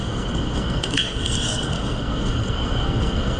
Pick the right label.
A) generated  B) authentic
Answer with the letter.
A